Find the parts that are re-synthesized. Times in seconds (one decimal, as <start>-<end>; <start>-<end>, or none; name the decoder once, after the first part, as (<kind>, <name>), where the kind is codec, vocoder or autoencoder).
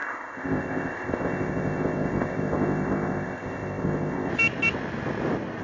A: 0.0-4.3 (codec, ZipCodec)